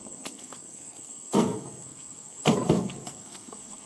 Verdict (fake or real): fake